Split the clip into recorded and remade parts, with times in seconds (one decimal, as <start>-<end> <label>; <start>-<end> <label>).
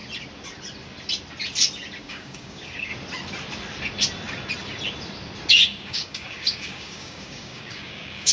0.0-2.0 recorded; 2.0-2.9 remade; 2.9-5.5 recorded; 5.5-8.3 remade